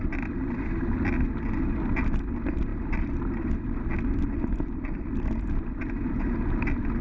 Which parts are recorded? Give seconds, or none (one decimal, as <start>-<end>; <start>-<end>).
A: 0.0-7.0